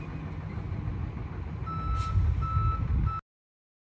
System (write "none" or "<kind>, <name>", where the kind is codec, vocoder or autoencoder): none